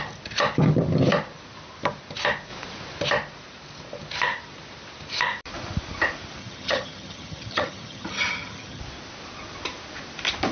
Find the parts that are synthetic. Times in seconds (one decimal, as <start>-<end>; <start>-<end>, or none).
6.4-8.8